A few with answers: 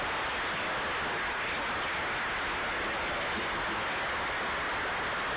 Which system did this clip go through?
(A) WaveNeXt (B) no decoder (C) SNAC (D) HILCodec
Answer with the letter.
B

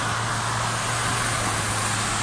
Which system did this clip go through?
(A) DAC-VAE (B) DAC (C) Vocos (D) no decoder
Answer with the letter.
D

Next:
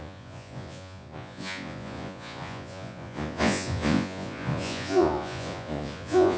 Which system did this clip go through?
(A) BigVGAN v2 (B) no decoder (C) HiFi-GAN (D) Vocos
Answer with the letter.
D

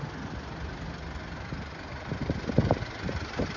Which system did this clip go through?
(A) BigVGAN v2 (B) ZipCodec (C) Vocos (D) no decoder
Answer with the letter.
D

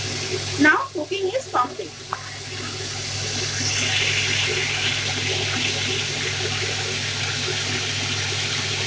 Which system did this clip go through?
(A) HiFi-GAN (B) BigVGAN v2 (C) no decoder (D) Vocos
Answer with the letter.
C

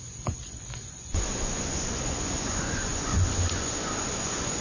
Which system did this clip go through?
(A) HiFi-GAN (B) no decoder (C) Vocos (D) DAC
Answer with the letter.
C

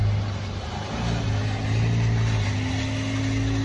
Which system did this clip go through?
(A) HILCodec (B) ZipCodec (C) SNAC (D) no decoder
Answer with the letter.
D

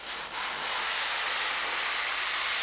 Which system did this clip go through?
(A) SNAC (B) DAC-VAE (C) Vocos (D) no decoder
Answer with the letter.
D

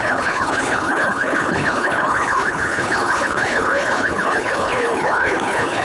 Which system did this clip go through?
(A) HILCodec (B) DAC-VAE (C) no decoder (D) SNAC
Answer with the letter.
A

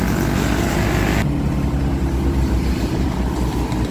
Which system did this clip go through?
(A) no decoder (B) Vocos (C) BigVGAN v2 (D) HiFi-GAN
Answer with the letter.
C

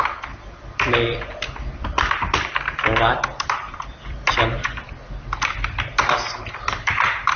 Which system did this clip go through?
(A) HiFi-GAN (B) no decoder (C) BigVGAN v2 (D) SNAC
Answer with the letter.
C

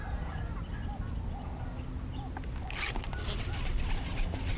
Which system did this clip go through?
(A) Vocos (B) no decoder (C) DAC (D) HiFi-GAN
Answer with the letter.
B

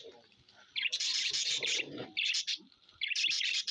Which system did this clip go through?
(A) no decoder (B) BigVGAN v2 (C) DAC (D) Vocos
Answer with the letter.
B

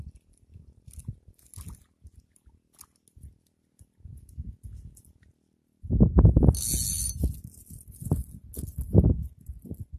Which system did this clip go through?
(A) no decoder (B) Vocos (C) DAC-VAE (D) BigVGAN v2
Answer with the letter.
A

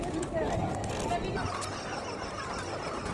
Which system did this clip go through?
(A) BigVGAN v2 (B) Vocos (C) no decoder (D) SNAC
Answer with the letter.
C